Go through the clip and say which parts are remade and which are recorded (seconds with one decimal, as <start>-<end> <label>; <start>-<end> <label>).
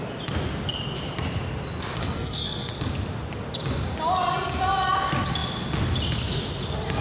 0.0-2.0 recorded; 2.0-2.7 remade; 2.7-7.0 recorded